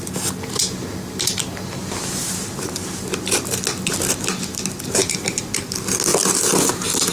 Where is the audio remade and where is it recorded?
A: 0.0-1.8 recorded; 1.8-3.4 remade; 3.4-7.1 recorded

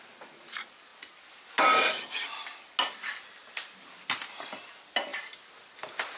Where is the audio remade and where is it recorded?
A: 0.0-6.2 recorded

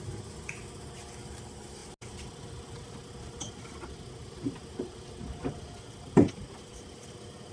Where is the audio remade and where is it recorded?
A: 0.0-7.5 recorded

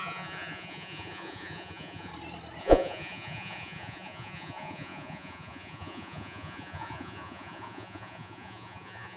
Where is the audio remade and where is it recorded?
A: 0.0-2.1 remade; 2.1-2.6 recorded; 2.6-9.2 remade

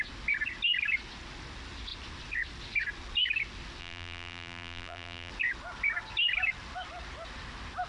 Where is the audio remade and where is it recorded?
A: 0.0-3.8 recorded; 3.8-5.3 remade; 5.3-7.9 recorded